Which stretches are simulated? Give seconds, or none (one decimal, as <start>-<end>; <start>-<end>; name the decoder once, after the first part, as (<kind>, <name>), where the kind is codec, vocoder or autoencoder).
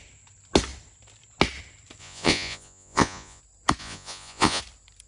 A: 2.0-3.4 (vocoder, Vocos); 3.8-4.6